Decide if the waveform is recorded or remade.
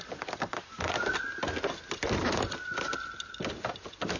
recorded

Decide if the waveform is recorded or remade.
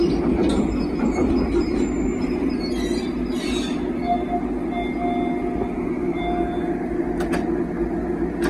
recorded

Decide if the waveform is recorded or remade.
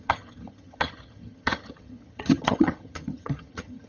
remade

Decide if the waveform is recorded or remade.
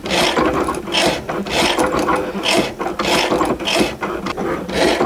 recorded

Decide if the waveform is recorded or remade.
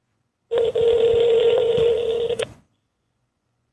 remade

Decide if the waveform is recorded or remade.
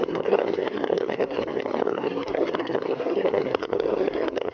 remade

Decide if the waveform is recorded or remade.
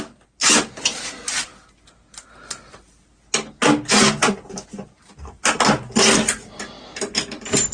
recorded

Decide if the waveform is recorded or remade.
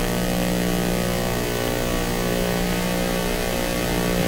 recorded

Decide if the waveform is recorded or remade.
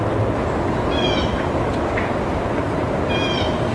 recorded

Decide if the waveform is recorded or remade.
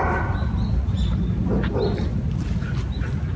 recorded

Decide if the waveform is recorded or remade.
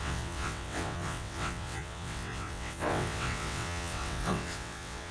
remade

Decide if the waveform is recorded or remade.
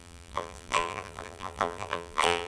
remade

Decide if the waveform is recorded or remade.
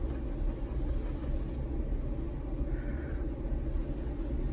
recorded